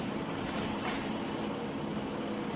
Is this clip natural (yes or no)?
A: yes